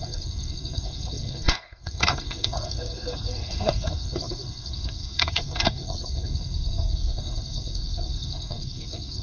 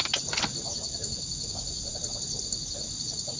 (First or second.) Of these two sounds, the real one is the second